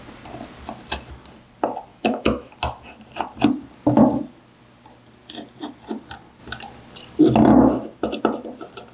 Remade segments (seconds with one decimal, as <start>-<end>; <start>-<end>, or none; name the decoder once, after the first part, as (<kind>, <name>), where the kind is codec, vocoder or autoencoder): 1.9-2.5 (autoencoder, DAC-VAE)